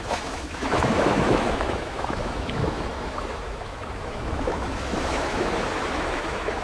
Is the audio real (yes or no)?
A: no